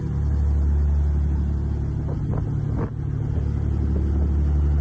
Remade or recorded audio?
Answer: recorded